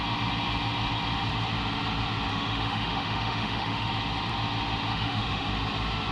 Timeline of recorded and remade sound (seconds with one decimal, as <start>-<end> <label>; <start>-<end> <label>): 0.0-2.3 recorded; 2.3-3.9 remade; 3.9-4.9 recorded; 4.9-5.5 remade; 5.5-6.1 recorded